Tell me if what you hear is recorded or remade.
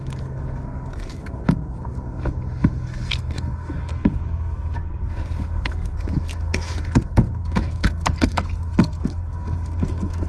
remade